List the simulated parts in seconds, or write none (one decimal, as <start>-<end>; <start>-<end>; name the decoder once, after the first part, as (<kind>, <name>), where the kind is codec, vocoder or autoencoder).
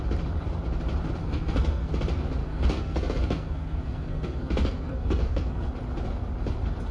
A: 1.2-1.9 (codec, SNAC); 2.4-5.7